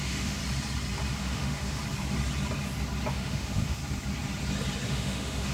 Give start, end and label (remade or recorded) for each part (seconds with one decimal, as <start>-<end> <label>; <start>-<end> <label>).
0.0-0.4 remade; 0.4-1.2 recorded; 1.2-1.8 remade; 1.8-3.1 recorded; 3.1-3.8 remade; 3.8-4.9 recorded; 4.9-5.5 remade